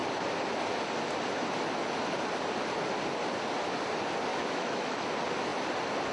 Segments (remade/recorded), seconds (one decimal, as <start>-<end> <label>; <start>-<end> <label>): 0.0-4.3 recorded; 4.3-5.1 remade; 5.1-6.1 recorded